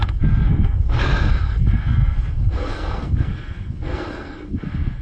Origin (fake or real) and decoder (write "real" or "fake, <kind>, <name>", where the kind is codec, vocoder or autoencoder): fake, codec, SNAC